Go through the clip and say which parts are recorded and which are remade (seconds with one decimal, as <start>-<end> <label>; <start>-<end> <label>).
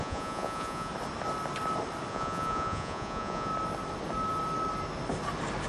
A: 0.0-0.9 remade; 0.9-2.1 recorded; 2.1-3.5 remade; 3.5-5.7 recorded